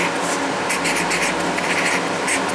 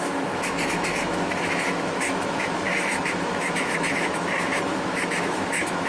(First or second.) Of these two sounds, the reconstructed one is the second